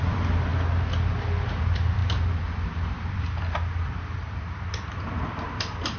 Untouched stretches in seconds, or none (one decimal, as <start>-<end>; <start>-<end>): 0.5-1.6